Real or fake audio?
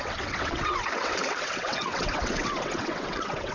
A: fake